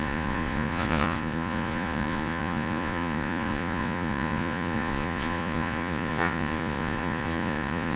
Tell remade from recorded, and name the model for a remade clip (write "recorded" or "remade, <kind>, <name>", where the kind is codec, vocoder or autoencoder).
remade, vocoder, Vocos